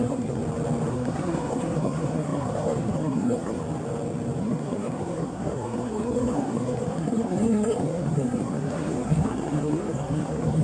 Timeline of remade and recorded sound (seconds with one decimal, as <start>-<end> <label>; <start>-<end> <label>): 0.0-0.4 remade; 0.4-0.9 recorded; 0.9-3.6 remade; 3.6-4.4 recorded; 4.4-10.6 remade